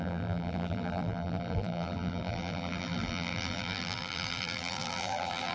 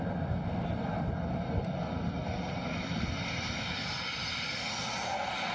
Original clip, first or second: second